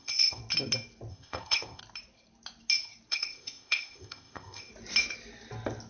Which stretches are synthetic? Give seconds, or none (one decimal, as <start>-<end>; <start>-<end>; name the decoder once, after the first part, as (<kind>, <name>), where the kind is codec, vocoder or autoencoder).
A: 0.0-0.4 (codec, ZipCodec); 1.1-1.8; 3.1-4.7